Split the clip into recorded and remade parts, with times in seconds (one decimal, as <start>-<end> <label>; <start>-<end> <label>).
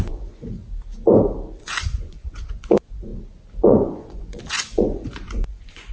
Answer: 0.0-0.6 remade; 0.6-1.6 recorded; 1.6-3.1 remade; 3.1-3.6 recorded; 3.6-5.9 remade